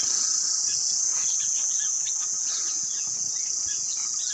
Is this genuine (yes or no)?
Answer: no